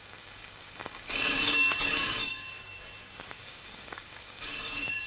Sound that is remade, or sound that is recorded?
remade